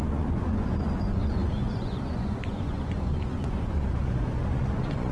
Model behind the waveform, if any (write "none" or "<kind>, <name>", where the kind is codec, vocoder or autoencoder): vocoder, Vocos